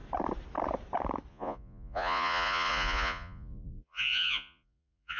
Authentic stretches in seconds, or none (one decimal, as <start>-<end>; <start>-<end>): 0.0-1.3